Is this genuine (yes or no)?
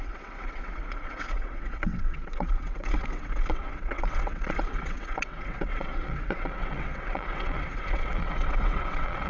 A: no